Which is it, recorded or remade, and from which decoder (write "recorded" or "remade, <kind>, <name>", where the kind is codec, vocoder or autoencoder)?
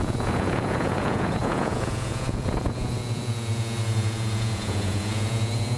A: remade, vocoder, Vocos